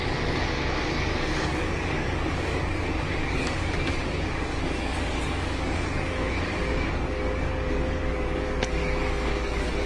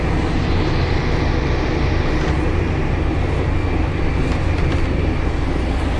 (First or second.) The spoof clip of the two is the first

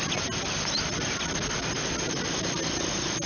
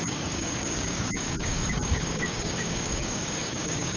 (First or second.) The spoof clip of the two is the second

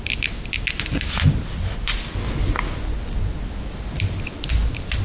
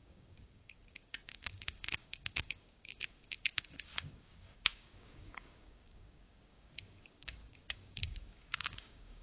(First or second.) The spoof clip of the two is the second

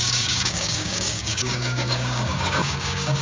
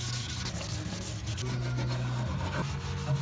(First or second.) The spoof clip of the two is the first